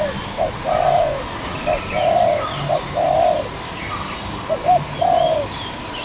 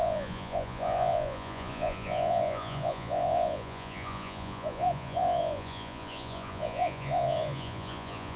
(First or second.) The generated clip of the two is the second